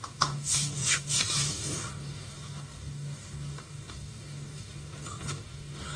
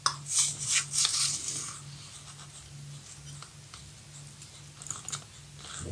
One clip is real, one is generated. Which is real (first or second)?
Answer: second